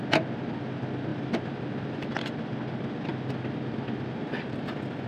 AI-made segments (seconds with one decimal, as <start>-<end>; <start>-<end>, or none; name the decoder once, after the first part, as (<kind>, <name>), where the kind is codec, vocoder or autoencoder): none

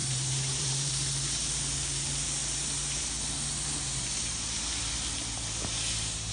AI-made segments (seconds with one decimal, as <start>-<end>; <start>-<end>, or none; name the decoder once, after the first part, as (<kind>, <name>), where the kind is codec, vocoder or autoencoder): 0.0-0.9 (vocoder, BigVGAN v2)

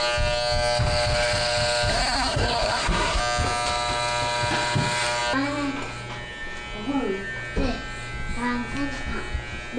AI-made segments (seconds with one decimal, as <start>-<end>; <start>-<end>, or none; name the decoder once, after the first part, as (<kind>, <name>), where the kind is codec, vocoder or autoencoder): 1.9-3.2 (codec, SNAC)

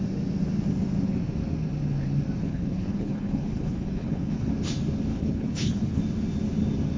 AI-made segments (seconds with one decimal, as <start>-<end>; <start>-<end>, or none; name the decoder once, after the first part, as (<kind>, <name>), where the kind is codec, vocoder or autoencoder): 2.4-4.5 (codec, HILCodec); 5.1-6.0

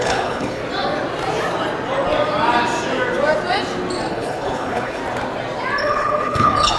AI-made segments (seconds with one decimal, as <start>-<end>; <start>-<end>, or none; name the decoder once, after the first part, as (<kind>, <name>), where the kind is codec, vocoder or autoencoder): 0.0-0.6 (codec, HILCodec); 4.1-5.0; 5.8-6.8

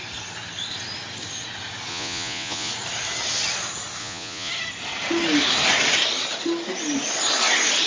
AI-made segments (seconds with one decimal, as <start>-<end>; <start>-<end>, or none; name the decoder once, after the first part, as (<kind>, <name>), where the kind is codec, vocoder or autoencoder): 1.9-2.7 (vocoder, Vocos); 4.0-4.5

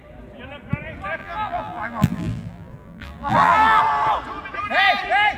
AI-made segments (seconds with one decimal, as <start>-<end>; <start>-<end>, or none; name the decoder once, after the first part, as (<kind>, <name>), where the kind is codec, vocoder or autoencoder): 1.2-3.8 (vocoder, BigVGAN v2)